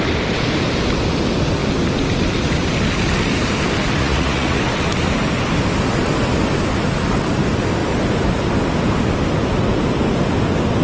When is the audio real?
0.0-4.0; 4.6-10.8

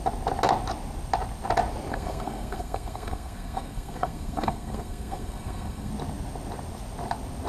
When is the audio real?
0.0-1.9; 5.9-7.5